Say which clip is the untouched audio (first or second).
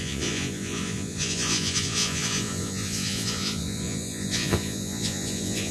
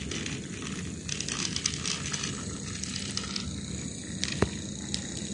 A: second